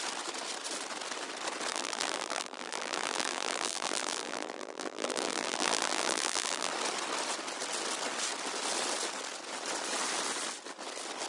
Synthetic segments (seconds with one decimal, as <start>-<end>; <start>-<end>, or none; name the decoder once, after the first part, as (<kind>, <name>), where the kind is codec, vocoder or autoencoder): 1.7-6.7 (vocoder, BigVGAN v2)